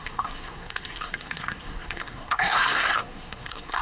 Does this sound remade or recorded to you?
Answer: remade